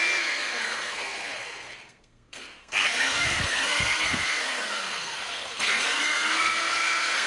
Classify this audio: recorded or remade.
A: remade